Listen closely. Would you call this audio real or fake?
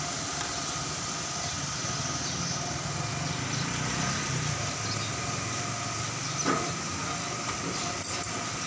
real